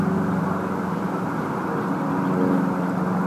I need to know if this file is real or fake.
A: real